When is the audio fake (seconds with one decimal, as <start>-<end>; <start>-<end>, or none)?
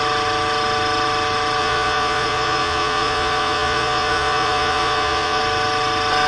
1.6-5.4